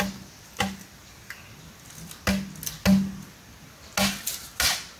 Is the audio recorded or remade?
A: recorded